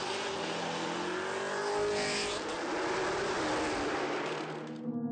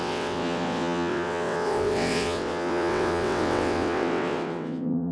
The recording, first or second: first